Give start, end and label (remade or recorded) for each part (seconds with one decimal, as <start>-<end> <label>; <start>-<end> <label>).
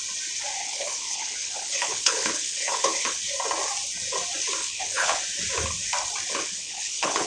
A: 0.0-0.6 recorded; 0.6-3.2 remade; 3.2-4.6 recorded; 4.6-5.2 remade; 5.2-6.3 recorded; 6.3-7.3 remade